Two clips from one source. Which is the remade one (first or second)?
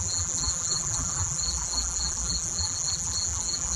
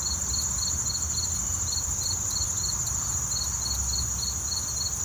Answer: first